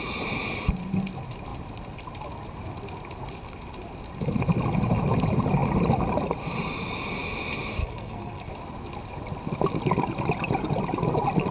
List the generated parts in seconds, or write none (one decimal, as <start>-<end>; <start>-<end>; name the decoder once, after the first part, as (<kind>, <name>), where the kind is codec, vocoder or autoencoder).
7.8-8.5 (codec, SNAC)